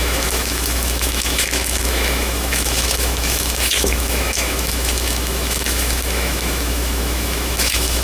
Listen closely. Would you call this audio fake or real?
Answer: fake